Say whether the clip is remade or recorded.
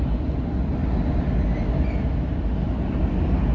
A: recorded